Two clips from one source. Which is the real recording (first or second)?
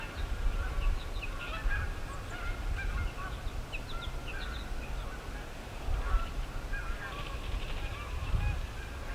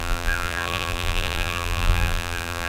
first